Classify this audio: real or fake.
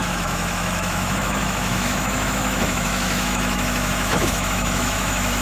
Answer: fake